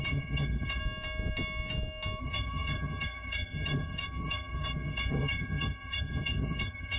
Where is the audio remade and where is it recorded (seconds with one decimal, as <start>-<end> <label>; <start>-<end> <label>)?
0.0-0.8 remade; 0.8-2.2 recorded; 2.2-7.0 remade